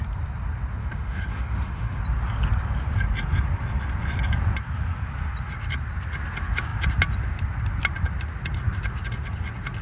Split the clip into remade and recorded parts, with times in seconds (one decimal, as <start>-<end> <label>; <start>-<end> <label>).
0.0-0.8 recorded; 0.8-2.0 remade; 2.0-9.8 recorded

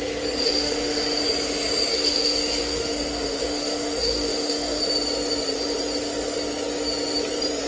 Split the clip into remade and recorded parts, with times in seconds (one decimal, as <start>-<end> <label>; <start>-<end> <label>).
0.0-0.4 recorded; 0.4-1.2 remade; 1.2-1.9 recorded; 1.9-4.8 remade; 4.8-7.7 recorded

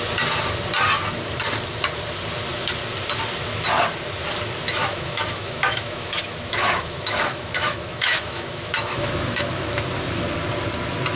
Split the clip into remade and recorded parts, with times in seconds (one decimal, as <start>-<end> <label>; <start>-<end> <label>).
0.0-4.8 recorded; 4.8-9.7 remade; 9.7-11.2 recorded